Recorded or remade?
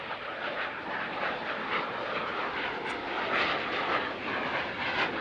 recorded